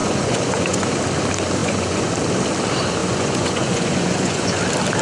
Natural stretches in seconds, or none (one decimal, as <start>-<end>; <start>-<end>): 0.9-1.6; 2.1-3.0; 4.6-5.0